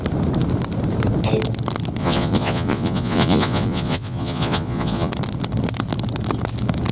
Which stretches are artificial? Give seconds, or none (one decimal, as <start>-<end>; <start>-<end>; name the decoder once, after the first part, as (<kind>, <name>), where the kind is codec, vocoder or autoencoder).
2.0-5.1 (vocoder, Vocos)